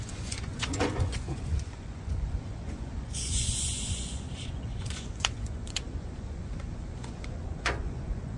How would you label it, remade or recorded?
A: remade